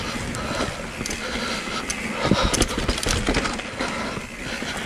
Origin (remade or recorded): recorded